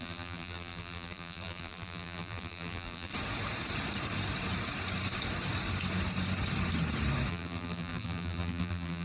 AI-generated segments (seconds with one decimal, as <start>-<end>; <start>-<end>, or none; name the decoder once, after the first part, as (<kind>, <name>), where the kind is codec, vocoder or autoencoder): 0.0-3.1 (vocoder, BigVGAN v2); 7.3-9.0